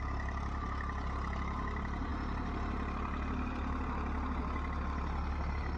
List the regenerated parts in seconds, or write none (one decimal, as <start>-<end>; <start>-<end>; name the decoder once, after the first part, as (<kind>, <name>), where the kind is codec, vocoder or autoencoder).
none

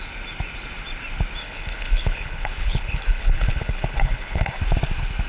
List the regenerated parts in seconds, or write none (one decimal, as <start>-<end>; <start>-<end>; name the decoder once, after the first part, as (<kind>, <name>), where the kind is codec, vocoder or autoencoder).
1.4-4.6 (codec, HILCodec)

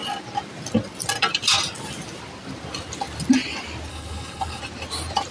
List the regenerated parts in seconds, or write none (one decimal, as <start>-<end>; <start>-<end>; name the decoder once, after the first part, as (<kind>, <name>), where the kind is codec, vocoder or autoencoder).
3.9-4.6 (codec, HILCodec)